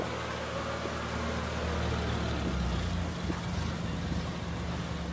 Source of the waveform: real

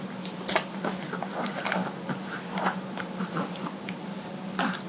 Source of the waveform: real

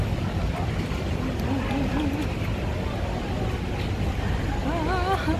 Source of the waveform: real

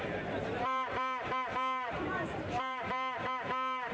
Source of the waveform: fake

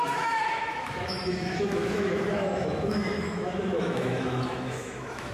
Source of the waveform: fake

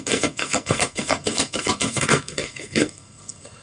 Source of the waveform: fake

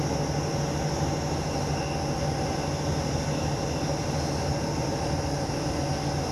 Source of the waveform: real